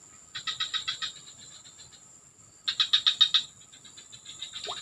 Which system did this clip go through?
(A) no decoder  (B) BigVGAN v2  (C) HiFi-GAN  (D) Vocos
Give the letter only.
A